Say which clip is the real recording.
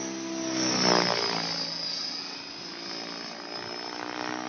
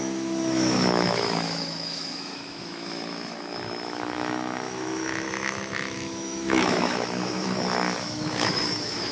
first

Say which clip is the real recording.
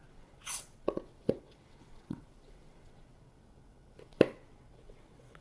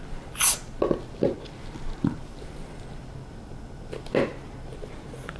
second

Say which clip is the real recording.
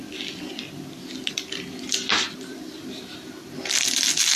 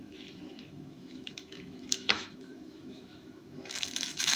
first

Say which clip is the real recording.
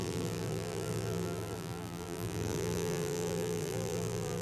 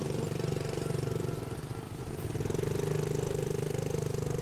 second